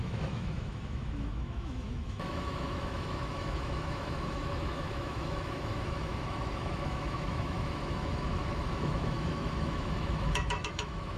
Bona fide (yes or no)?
no